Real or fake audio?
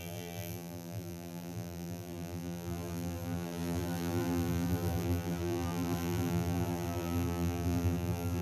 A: fake